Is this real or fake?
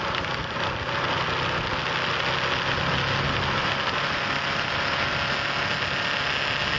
real